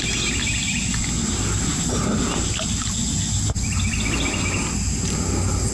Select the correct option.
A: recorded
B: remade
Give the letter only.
A